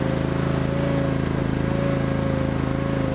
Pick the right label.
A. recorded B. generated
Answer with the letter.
A